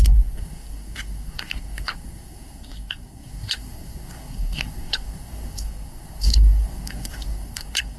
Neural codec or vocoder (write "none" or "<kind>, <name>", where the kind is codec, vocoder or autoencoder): codec, SNAC